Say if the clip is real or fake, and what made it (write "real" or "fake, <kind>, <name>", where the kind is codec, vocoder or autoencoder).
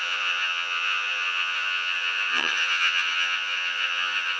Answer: fake, vocoder, HiFi-GAN